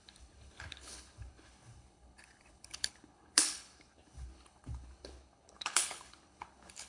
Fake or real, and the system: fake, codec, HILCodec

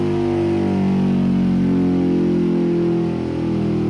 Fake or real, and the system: real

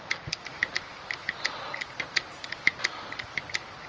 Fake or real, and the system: real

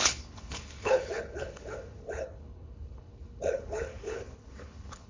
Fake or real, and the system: fake, codec, HILCodec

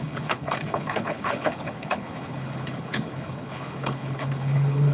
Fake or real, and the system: fake, codec, HILCodec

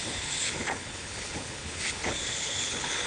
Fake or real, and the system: fake, codec, HILCodec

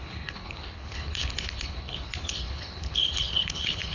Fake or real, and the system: fake, codec, HILCodec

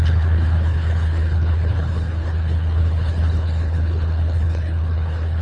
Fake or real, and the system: fake, codec, HILCodec